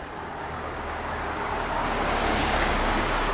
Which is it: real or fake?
fake